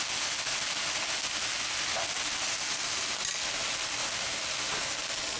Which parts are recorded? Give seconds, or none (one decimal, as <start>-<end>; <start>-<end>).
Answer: 0.0-5.4